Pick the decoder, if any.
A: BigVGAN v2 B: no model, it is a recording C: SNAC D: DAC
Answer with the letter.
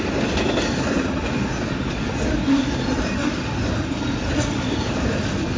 B